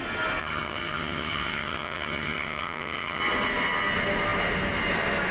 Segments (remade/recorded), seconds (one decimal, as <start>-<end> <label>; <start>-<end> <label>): 0.0-0.4 recorded; 0.4-3.2 remade; 3.2-5.3 recorded